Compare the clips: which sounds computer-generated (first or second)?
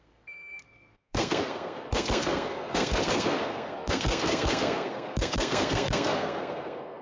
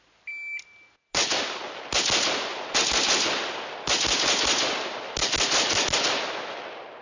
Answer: first